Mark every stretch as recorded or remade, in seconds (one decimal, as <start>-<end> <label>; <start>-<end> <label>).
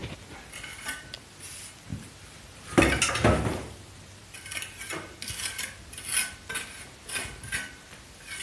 0.0-8.4 recorded